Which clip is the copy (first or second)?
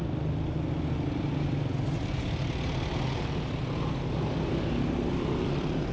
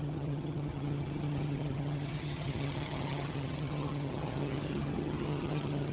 second